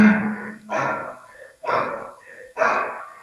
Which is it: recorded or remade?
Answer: remade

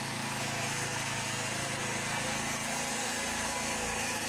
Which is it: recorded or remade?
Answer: remade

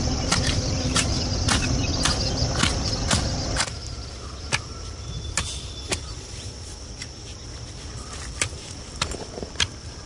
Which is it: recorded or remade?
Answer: recorded